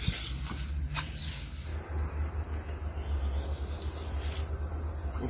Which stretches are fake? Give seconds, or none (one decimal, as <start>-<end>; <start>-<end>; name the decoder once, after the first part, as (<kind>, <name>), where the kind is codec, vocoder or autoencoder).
none